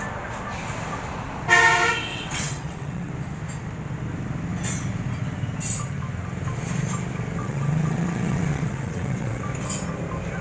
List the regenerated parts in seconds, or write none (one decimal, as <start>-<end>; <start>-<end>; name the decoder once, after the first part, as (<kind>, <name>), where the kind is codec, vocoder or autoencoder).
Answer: 2.1-3.1 (vocoder, WaveNeXt); 7.4-9.4